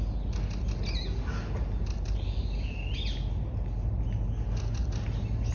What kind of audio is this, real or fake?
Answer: real